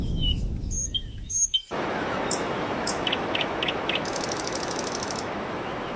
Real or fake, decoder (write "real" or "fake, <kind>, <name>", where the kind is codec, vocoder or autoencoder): fake, autoencoder, DAC-VAE